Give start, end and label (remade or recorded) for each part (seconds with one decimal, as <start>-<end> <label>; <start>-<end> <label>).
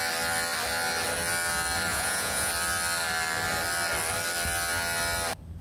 0.0-1.9 recorded; 1.9-2.5 remade; 2.5-5.6 recorded